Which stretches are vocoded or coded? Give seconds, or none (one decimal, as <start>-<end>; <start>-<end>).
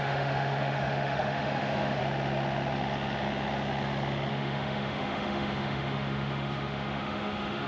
0.0-2.0; 4.3-7.7